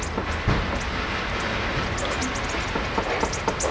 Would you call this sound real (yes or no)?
yes